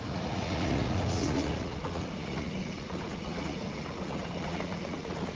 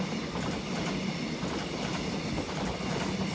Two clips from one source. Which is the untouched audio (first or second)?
second